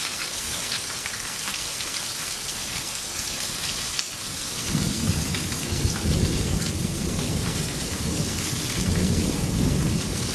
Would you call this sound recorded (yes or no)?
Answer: no